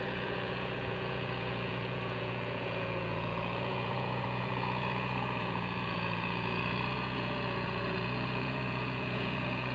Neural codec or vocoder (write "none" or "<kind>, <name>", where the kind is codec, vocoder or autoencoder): vocoder, Vocos